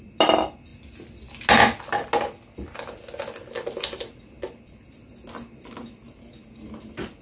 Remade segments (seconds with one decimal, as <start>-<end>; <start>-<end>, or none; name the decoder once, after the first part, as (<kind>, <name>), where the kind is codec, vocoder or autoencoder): none